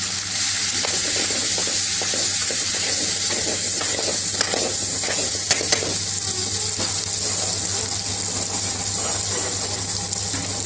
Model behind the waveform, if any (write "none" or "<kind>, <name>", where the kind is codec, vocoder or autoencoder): none